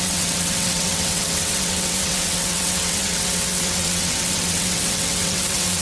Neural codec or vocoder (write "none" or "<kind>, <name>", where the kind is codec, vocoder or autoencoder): vocoder, WaveNeXt